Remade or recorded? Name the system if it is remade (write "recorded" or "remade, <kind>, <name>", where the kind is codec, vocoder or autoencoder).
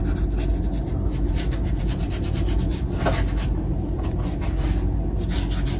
recorded